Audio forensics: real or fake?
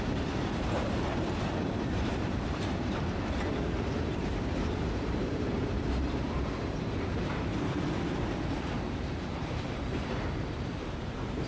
fake